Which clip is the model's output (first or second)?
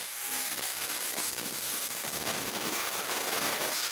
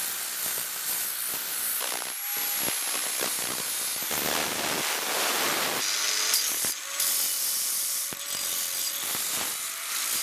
first